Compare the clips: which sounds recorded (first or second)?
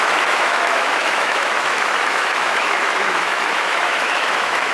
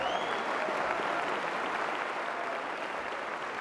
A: second